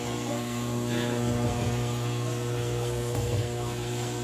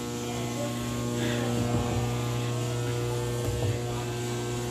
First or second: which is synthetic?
first